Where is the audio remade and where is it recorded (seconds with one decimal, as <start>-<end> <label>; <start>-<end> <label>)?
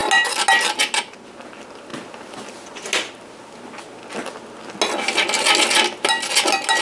0.0-6.8 recorded